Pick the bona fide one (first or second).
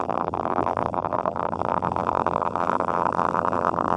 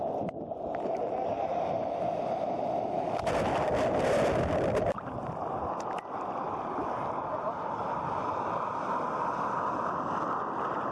second